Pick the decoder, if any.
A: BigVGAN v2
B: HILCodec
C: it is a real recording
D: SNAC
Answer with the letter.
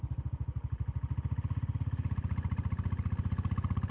C